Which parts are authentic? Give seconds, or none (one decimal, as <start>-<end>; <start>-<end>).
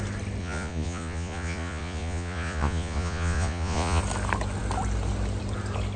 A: 0.0-0.4; 4.0-6.0